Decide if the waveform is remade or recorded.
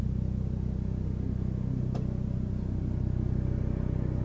recorded